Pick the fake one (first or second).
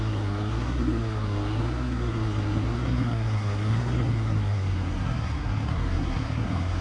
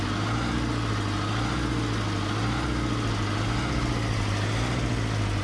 first